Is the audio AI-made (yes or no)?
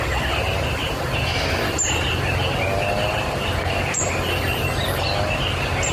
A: no